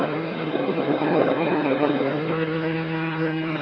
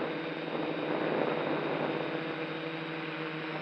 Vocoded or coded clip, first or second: first